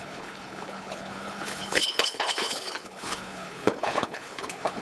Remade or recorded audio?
remade